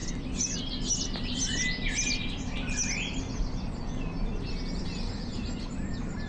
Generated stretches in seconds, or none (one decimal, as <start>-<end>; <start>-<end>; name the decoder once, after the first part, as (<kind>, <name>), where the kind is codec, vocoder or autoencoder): none